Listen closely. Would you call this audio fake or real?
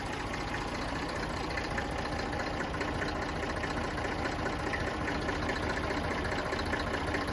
fake